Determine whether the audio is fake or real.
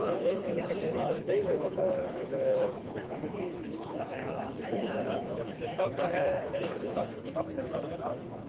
fake